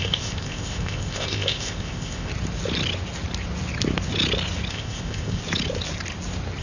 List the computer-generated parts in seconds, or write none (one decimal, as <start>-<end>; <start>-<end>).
0.0-2.3; 4.7-5.4

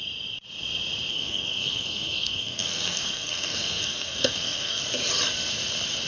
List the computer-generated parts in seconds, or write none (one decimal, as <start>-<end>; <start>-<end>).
1.1-4.8